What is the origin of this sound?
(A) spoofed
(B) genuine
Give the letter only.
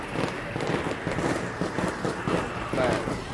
B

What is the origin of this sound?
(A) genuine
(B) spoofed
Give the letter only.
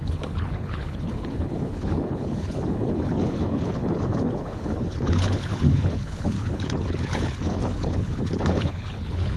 B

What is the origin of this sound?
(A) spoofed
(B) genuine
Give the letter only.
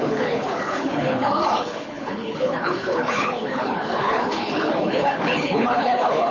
A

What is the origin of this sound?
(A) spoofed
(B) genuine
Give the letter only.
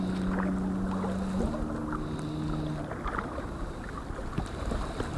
B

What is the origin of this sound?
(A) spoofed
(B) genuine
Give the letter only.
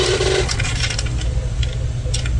B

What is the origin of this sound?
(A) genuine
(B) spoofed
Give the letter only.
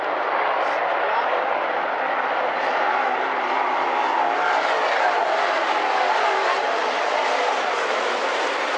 A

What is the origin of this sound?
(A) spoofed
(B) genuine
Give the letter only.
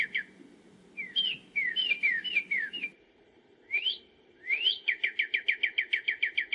B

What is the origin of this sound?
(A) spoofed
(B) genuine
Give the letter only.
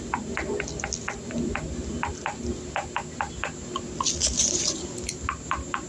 B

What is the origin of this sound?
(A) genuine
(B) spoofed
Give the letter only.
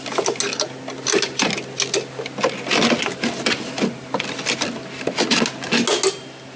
A